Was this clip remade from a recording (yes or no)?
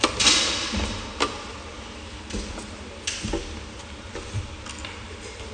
no